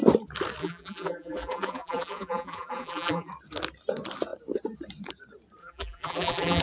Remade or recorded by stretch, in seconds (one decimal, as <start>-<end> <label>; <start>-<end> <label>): 0.0-0.6 recorded; 0.6-3.3 remade; 3.3-5.6 recorded; 5.6-6.6 remade